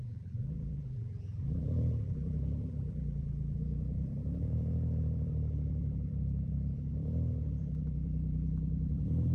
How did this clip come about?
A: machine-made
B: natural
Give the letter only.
A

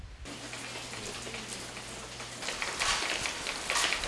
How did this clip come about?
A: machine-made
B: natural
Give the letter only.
B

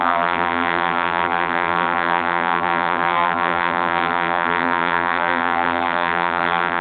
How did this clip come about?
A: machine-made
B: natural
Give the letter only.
A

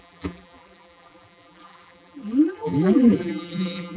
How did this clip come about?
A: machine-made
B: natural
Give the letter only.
A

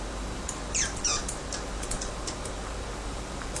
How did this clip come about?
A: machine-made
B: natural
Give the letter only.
A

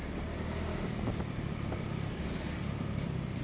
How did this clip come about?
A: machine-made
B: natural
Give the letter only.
B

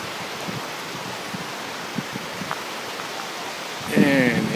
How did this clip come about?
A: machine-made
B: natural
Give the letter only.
B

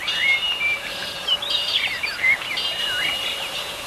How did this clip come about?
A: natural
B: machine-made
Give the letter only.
B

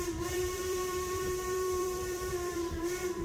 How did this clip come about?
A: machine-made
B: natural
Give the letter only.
A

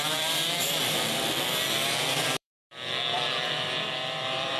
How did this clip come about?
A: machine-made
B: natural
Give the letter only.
A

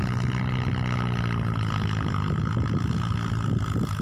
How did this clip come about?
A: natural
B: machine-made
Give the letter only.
A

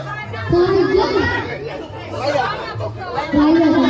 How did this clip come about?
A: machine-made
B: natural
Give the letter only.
A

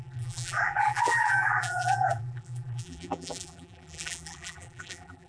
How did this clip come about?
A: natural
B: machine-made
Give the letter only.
B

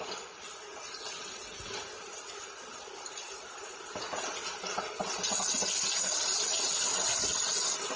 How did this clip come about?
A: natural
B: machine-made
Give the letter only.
A